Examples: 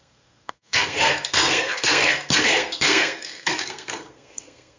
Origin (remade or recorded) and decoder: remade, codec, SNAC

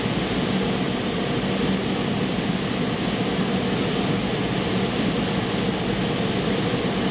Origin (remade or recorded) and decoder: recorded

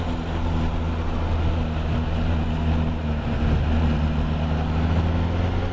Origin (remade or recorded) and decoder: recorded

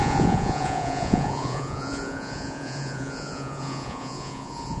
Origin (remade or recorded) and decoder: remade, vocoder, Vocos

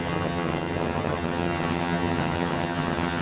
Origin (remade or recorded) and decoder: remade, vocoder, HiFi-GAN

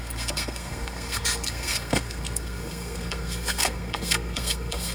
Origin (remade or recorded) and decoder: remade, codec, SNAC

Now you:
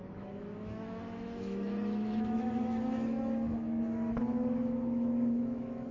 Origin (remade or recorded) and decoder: remade, autoencoder, DAC-VAE